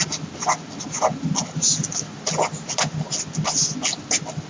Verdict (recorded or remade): recorded